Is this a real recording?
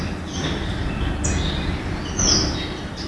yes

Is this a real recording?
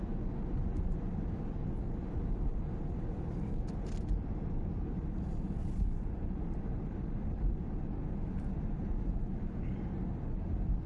yes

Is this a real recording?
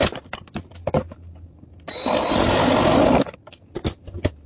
yes